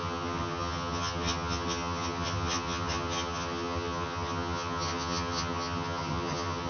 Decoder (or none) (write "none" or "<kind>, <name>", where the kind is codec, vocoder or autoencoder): vocoder, HiFi-GAN